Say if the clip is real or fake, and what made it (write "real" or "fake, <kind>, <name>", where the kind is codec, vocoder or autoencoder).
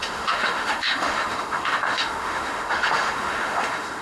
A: fake, autoencoder, DAC-VAE